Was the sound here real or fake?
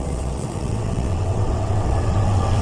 fake